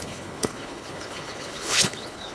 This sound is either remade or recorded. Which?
remade